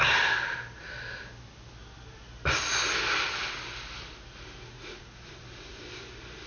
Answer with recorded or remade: recorded